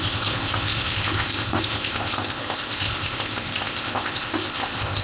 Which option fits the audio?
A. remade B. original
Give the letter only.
A